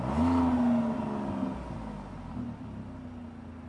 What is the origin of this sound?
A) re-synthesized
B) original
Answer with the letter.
B